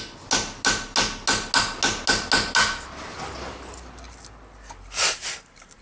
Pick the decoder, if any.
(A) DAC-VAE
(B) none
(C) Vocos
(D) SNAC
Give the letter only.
B